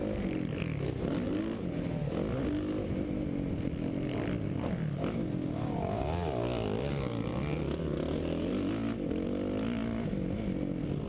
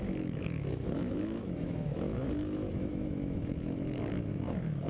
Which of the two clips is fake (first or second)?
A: second